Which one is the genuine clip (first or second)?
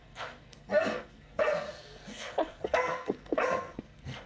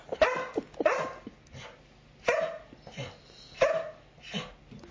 second